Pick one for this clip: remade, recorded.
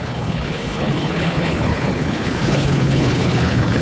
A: remade